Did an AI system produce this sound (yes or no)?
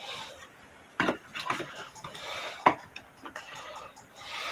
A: no